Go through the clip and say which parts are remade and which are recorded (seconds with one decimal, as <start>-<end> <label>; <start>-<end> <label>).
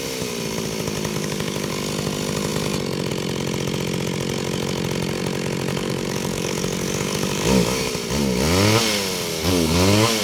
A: 0.0-1.1 recorded; 1.1-1.7 remade; 1.7-5.7 recorded; 5.7-7.9 remade; 7.9-9.3 recorded; 9.3-10.2 remade